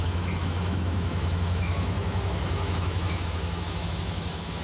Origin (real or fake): fake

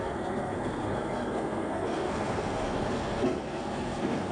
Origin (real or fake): fake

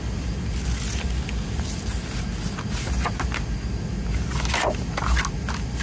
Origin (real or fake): real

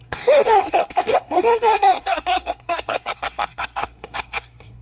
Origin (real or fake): fake